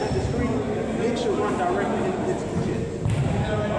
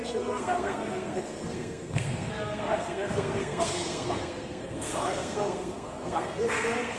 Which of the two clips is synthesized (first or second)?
second